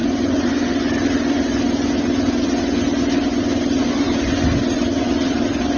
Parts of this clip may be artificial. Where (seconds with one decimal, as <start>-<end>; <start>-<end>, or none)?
0.0-0.5